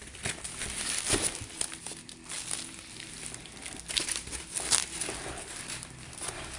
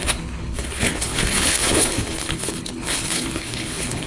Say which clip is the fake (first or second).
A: second